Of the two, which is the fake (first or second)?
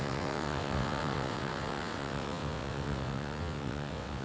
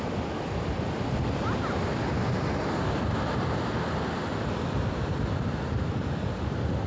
first